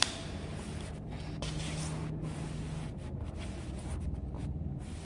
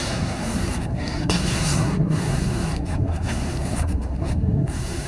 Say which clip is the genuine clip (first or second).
first